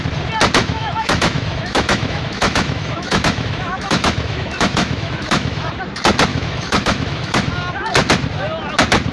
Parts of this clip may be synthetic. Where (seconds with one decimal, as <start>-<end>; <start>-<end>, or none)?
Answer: 0.6-5.7; 6.3-7.5